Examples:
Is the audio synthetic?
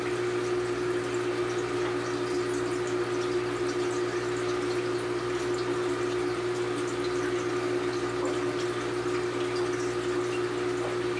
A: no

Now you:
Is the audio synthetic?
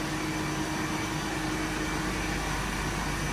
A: no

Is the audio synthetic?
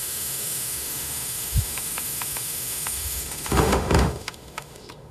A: yes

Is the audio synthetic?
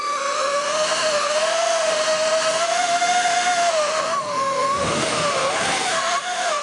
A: yes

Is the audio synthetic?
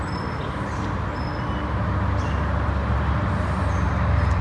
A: no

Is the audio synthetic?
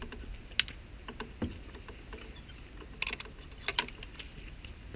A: no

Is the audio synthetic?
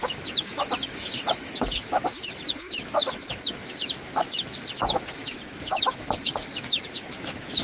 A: yes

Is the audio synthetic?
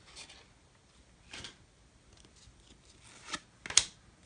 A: no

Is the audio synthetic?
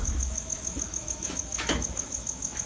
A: yes